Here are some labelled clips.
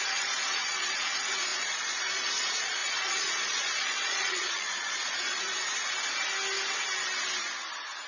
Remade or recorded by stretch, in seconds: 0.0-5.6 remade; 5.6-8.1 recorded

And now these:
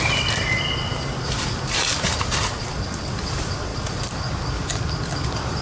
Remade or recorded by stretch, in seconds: 0.0-5.6 recorded

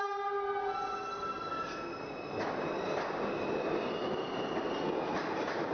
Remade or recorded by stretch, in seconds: 0.0-5.7 recorded

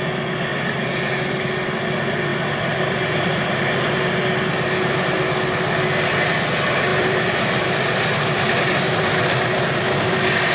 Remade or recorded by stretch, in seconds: 0.0-2.3 recorded; 2.3-4.1 remade; 4.1-6.9 recorded; 6.9-10.5 remade

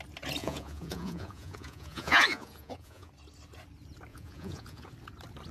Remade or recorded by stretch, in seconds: 0.0-0.4 recorded; 0.4-3.1 remade; 3.1-4.1 recorded; 4.1-4.9 remade; 4.9-5.5 recorded

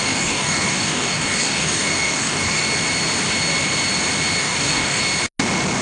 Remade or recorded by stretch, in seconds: 0.0-2.7 remade; 2.7-4.4 recorded; 4.4-5.0 remade; 5.0-5.8 recorded